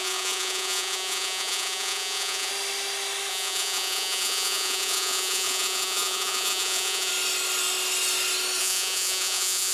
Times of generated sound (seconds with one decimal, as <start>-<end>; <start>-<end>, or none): 0.0-2.5; 3.3-7.1; 8.6-9.7